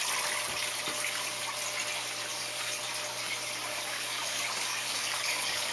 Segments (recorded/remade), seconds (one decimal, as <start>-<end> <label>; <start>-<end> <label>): 0.0-2.3 recorded; 2.3-2.8 remade; 2.8-3.7 recorded; 3.7-5.7 remade